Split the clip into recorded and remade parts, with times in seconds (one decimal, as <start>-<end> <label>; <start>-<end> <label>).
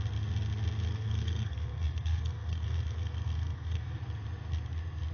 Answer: 0.0-0.9 recorded; 0.9-4.0 remade; 4.0-5.1 recorded